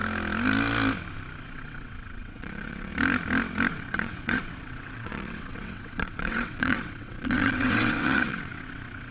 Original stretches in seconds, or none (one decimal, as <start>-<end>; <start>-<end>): 0.0-1.4; 2.9-3.7